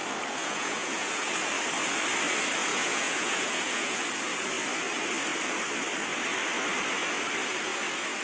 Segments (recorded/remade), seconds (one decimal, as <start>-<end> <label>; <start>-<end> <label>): 0.0-0.4 recorded; 0.4-1.3 remade; 1.3-2.7 recorded; 2.7-4.0 remade; 4.0-8.2 recorded